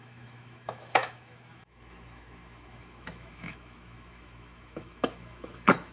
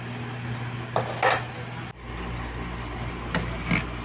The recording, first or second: second